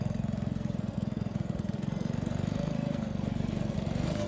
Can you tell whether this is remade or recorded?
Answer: remade